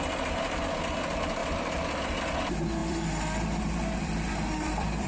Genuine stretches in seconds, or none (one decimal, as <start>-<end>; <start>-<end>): 0.0-1.4; 2.2-2.8